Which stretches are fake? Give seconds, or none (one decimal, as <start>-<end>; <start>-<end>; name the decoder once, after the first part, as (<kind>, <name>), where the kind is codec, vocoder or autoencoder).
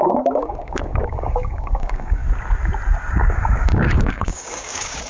0.0-2.2 (codec, DAC); 3.1-5.1